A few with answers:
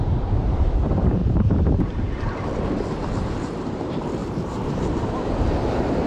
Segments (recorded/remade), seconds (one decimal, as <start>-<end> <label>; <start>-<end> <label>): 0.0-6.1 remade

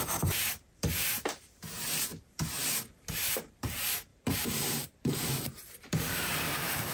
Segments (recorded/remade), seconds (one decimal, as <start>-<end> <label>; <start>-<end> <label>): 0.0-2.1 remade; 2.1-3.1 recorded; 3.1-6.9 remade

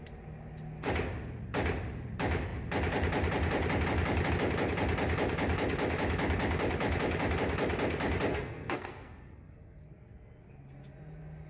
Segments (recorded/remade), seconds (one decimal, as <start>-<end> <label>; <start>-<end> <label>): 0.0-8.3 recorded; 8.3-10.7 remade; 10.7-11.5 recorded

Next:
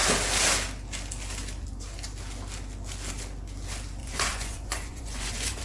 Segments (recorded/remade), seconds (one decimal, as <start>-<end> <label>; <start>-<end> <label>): 0.0-4.0 recorded; 4.0-5.6 remade

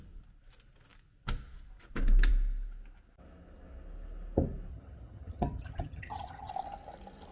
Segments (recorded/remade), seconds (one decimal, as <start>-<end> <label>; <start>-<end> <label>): 0.0-4.7 recorded; 4.7-6.5 remade; 6.5-7.3 recorded